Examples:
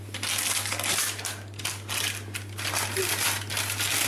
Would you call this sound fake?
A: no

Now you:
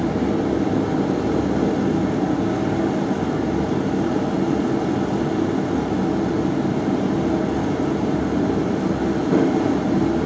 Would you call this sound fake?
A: no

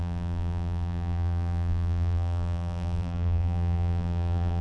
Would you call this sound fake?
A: yes